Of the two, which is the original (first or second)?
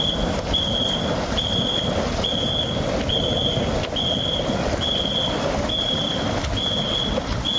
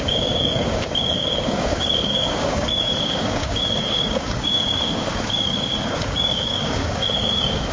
first